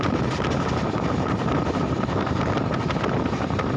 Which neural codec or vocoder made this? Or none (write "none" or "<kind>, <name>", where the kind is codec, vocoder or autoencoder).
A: vocoder, BigVGAN v2